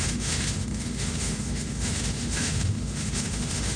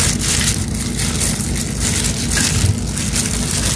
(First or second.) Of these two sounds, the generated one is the first